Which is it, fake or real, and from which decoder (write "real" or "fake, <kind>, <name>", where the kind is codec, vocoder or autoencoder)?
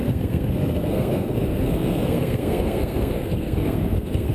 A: fake, codec, SNAC